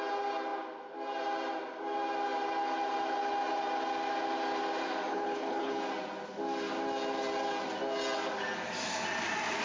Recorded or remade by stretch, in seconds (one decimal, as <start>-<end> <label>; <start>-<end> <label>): 0.0-5.1 recorded; 5.1-5.8 remade; 5.8-9.6 recorded